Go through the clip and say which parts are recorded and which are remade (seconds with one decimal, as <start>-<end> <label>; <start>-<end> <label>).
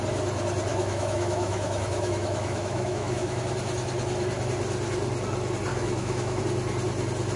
0.0-0.7 recorded; 0.7-3.4 remade; 3.4-5.7 recorded; 5.7-6.4 remade; 6.4-7.4 recorded